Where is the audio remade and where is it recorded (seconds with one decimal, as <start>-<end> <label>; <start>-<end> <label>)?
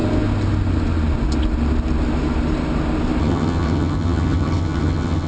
0.0-3.2 recorded; 3.2-5.3 remade